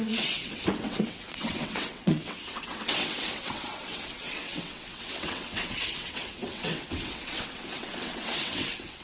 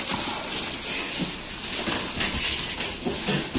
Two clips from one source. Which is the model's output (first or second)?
first